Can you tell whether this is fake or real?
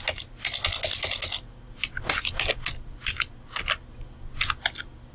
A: real